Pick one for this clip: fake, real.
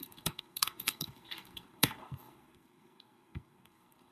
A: fake